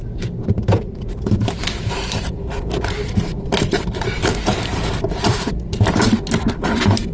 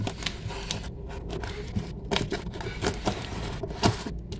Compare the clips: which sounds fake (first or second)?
first